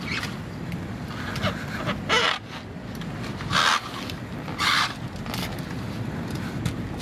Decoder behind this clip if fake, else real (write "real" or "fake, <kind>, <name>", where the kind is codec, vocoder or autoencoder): real